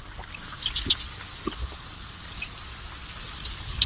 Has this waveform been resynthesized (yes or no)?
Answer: no